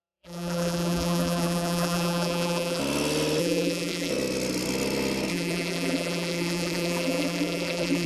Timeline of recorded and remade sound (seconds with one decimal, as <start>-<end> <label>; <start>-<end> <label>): 0.0-2.8 remade; 2.8-3.4 recorded; 3.4-4.1 remade; 4.1-5.3 recorded; 5.3-8.1 remade